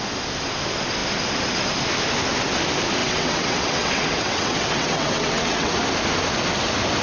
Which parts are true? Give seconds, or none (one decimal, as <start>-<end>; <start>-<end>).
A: 0.0-3.0; 5.7-7.0